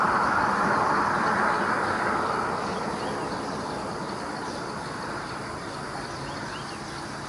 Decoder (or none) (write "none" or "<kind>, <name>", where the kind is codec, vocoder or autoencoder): none